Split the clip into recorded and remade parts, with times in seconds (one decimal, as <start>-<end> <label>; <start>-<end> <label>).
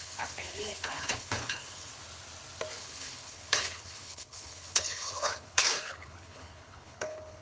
0.0-1.9 remade; 1.9-2.8 recorded; 2.8-7.4 remade